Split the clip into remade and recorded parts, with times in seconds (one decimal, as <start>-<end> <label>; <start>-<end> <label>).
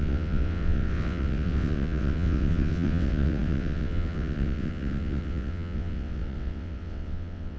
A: 0.0-7.6 remade